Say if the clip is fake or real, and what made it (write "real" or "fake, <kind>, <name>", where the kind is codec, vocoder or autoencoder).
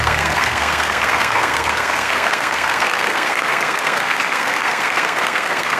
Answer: fake, codec, SNAC